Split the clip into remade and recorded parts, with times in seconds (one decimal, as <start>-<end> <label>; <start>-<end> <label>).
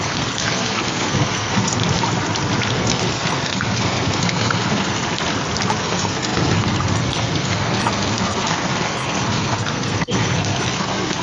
0.0-1.8 remade; 1.8-2.7 recorded; 2.7-5.0 remade; 5.0-5.8 recorded; 5.8-11.2 remade